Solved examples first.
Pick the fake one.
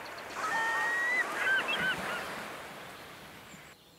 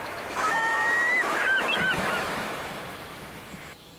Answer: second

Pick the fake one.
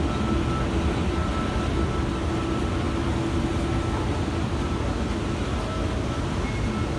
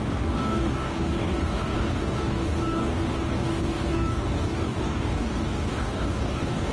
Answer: second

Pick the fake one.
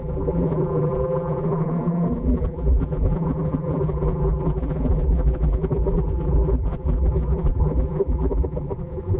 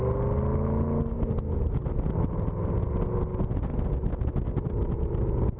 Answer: first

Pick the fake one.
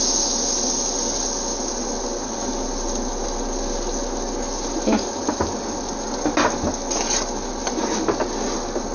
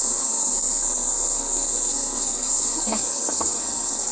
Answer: second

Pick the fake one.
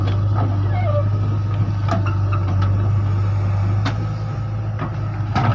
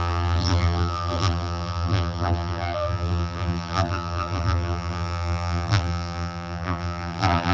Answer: second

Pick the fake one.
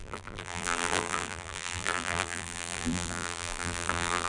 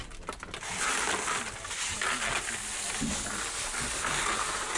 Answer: first